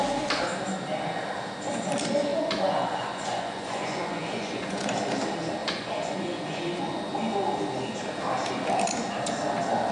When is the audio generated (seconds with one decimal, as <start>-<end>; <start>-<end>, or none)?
2.3-4.9; 5.6-7.1